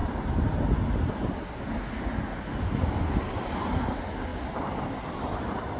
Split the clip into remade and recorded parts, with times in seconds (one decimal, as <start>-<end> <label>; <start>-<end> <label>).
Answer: 0.0-5.8 recorded